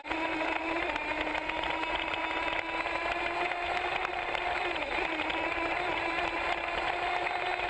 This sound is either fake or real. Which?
real